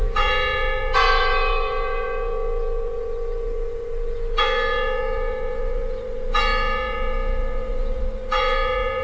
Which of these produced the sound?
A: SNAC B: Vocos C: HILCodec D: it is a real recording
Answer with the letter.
B